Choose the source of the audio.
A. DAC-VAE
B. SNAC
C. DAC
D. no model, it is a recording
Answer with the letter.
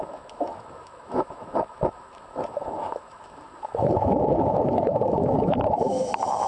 A